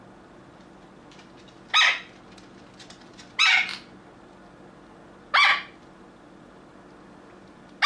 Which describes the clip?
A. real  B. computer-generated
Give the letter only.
A